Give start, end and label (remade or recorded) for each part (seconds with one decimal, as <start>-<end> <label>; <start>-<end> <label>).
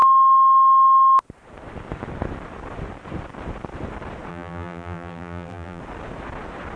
0.0-4.3 recorded; 4.3-5.8 remade; 5.8-6.8 recorded